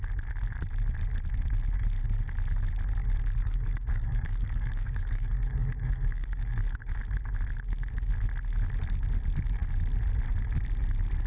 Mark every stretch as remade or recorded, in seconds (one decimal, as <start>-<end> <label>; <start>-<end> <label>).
0.0-3.0 recorded; 3.0-7.0 remade; 7.0-11.3 recorded